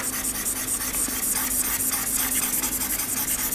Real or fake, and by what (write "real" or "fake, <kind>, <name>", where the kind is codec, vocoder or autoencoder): real